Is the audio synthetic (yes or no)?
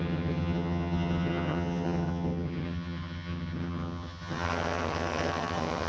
yes